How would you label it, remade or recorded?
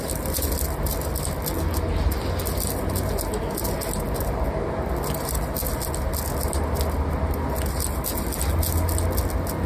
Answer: recorded